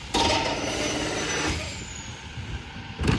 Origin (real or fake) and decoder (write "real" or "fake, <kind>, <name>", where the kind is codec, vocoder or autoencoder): real